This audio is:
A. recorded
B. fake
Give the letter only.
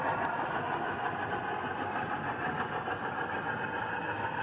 A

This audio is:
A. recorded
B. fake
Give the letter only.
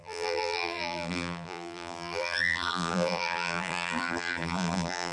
B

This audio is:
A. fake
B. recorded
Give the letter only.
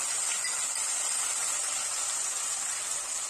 B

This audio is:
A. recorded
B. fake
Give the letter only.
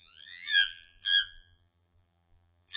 B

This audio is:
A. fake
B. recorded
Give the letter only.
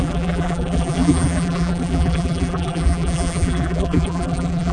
A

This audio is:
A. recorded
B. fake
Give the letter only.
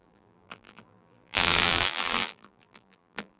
B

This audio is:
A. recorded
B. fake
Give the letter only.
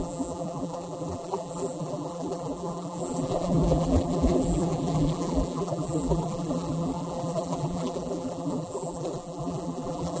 B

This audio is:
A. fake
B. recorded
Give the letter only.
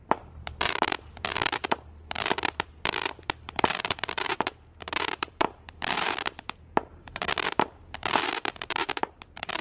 A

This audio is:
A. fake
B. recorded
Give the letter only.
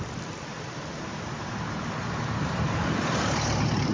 A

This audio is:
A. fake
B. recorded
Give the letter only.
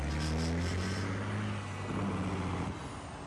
B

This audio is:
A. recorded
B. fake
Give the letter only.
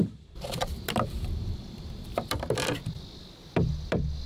B